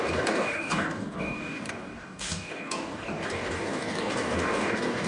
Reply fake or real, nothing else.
fake